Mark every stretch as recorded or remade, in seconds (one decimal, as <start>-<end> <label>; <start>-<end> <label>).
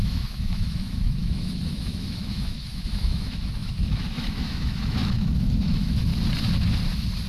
0.0-6.1 remade; 6.1-7.3 recorded